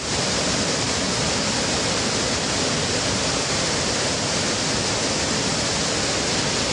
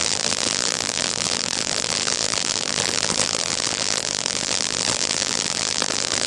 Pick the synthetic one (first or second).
second